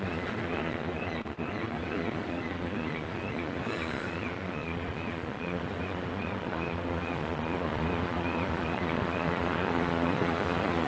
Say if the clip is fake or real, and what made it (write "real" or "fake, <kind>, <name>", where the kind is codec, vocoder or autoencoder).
fake, vocoder, Vocos